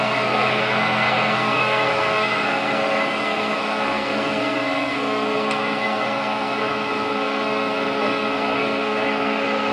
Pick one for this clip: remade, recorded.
remade